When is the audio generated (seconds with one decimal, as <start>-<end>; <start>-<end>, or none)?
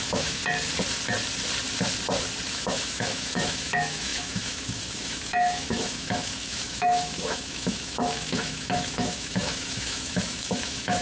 0.0-0.4; 2.5-11.0